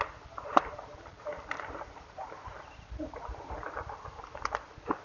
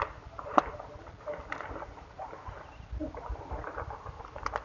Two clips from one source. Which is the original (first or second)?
second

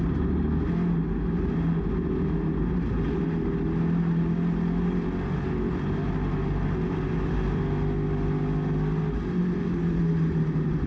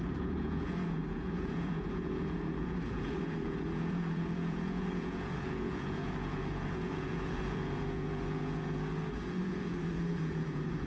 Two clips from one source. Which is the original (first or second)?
first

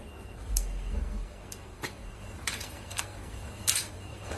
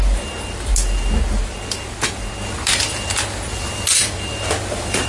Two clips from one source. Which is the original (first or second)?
second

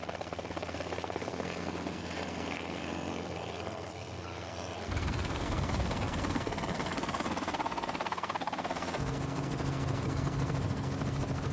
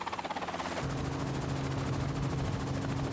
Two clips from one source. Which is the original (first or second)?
second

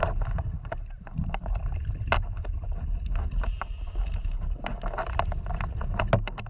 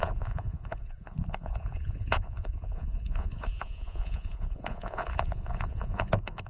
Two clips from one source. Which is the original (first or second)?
first